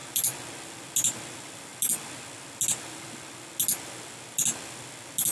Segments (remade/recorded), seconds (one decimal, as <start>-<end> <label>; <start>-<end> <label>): 0.0-5.3 recorded